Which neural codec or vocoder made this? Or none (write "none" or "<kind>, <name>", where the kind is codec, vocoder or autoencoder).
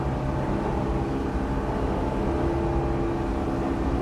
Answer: none